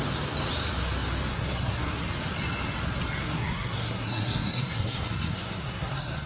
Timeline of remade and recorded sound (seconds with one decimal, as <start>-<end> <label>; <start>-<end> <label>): 0.0-1.3 recorded; 1.3-2.0 remade; 2.0-3.2 recorded; 3.2-6.3 remade